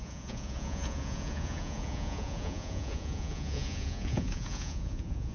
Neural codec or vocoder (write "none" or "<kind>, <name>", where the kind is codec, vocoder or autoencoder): vocoder, Vocos